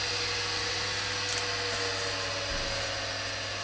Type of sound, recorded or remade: recorded